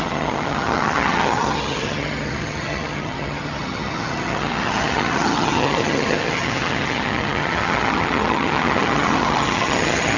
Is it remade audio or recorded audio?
remade